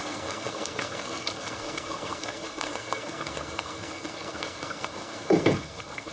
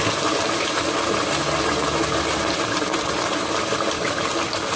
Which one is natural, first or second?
second